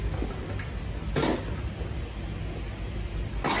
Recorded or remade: recorded